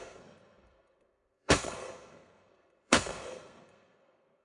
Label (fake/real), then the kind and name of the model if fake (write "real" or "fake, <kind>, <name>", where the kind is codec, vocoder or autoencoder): fake, codec, SNAC